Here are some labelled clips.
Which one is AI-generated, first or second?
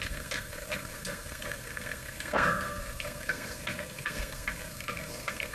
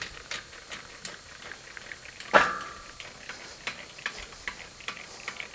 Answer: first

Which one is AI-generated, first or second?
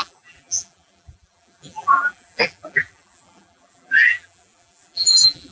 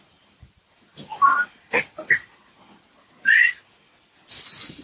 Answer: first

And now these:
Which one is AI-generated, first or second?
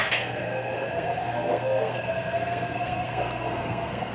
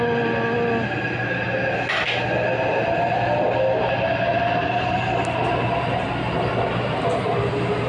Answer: first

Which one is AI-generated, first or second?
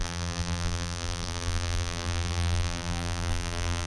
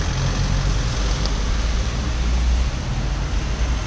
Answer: first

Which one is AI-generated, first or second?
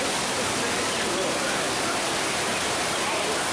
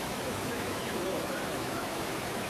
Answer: second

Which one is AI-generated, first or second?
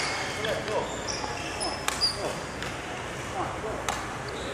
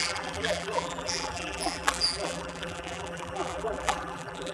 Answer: second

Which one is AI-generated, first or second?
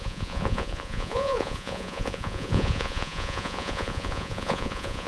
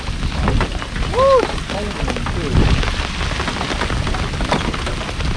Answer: first